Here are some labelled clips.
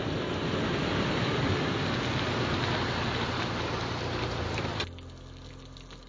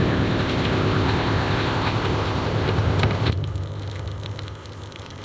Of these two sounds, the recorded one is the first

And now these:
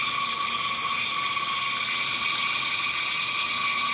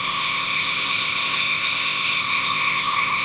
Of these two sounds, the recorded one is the first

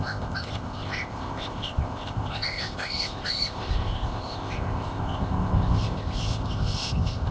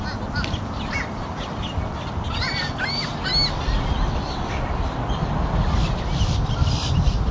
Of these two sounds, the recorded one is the second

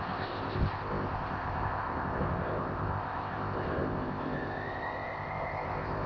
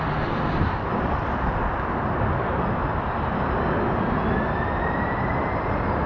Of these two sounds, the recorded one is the second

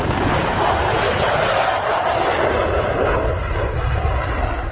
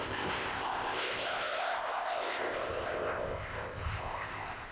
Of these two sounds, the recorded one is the first